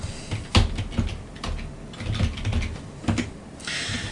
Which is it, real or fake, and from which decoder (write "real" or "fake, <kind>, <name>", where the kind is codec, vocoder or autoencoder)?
real